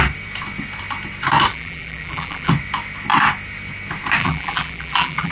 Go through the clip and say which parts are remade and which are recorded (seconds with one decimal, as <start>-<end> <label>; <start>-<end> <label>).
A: 0.0-1.5 recorded; 1.5-2.5 remade; 2.5-4.2 recorded; 4.2-5.3 remade